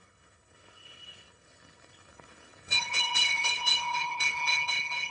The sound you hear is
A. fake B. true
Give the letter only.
A